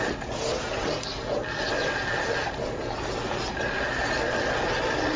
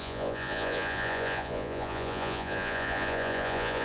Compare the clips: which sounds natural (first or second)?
first